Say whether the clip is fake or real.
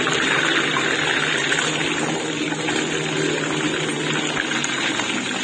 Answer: real